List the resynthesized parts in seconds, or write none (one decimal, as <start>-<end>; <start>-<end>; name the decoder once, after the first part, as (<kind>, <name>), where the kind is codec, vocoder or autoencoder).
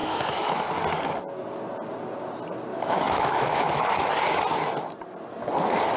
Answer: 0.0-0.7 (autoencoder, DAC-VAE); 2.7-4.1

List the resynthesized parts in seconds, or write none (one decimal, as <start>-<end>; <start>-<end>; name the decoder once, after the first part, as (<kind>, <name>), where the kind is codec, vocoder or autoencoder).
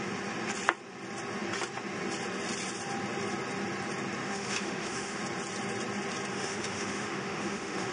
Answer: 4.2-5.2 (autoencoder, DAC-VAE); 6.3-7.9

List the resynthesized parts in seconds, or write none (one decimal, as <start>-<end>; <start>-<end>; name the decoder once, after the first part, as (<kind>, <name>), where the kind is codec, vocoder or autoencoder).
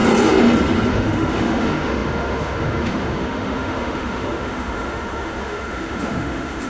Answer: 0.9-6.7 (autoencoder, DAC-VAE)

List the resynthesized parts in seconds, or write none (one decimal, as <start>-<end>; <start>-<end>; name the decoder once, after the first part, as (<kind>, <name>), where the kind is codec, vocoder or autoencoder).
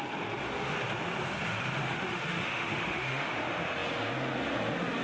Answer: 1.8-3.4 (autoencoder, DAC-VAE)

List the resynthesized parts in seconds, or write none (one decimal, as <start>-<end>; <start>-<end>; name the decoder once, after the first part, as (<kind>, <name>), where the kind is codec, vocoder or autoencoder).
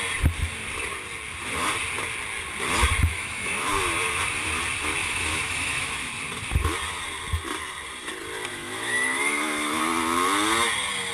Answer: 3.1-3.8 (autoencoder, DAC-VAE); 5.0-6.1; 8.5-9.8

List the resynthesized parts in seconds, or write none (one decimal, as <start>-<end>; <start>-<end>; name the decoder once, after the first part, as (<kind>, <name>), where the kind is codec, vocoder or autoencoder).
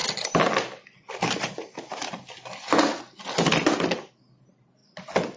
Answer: none